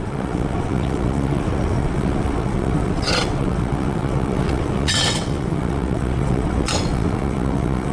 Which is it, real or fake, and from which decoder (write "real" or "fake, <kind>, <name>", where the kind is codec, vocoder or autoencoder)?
fake, vocoder, WaveNeXt